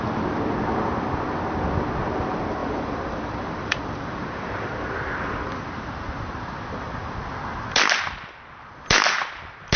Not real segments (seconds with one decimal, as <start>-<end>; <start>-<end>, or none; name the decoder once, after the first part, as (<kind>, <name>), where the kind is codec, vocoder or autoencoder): 2.6-4.7 (vocoder, BigVGAN v2)